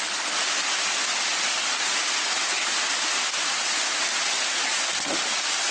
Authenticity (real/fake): real